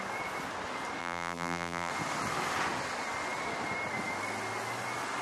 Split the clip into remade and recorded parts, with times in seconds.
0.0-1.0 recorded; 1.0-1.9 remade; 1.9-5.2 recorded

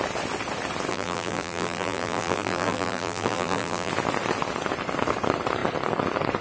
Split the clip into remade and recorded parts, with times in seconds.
0.0-0.9 recorded; 0.9-3.9 remade; 3.9-6.4 recorded